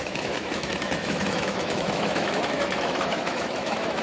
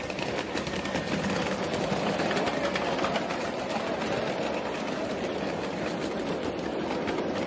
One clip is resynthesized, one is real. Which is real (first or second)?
second